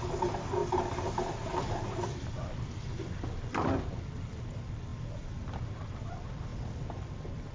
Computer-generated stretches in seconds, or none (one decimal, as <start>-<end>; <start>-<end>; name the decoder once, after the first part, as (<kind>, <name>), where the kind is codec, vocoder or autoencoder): none